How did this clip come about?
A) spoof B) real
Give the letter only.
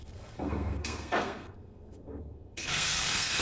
A